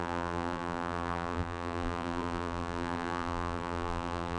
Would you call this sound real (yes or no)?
no